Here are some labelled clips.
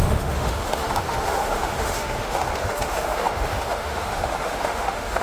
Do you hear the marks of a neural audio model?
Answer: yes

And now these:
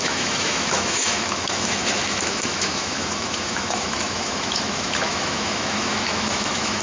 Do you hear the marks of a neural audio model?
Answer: yes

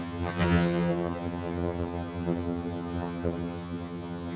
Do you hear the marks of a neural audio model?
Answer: yes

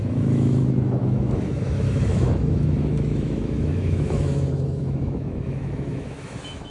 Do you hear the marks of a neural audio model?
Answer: yes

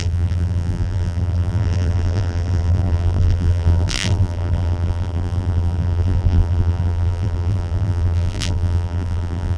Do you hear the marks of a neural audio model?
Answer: yes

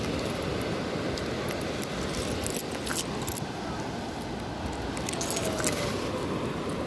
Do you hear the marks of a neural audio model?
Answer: no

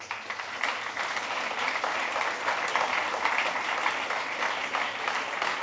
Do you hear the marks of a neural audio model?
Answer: no